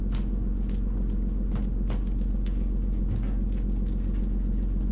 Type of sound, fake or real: real